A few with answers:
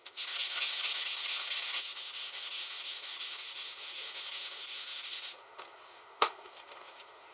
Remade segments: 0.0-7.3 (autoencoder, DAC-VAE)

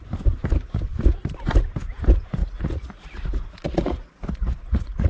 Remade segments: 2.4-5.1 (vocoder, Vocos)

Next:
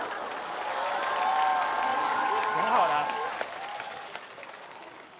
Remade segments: 1.9-3.3 (codec, DAC); 3.7-5.2

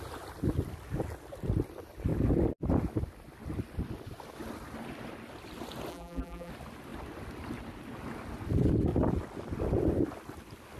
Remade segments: 5.9-6.5 (vocoder, BigVGAN v2)

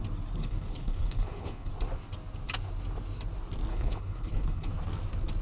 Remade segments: 0.4-1.7 (codec, HILCodec); 3.7-4.7